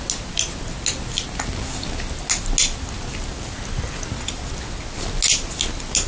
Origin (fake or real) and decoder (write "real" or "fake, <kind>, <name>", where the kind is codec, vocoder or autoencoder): real